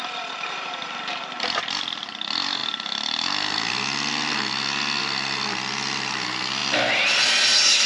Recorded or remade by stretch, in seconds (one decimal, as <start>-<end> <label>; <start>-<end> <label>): 0.0-2.6 remade; 2.6-5.0 recorded; 5.0-7.9 remade